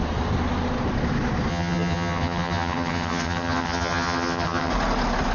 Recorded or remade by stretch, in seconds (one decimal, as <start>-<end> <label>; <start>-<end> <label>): 0.0-1.5 recorded; 1.5-4.7 remade; 4.7-5.3 recorded